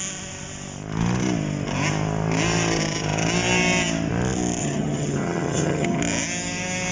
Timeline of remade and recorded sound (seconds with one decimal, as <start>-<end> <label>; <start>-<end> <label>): 0.0-4.6 recorded; 4.6-6.0 remade; 6.0-6.9 recorded